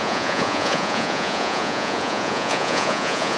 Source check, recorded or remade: remade